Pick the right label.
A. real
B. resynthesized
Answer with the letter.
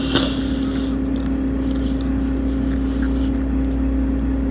A